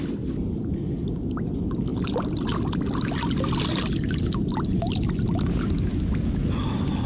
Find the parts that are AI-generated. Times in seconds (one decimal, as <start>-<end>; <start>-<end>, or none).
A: none